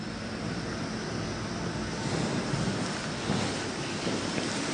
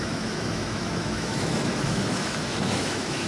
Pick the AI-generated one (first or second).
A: second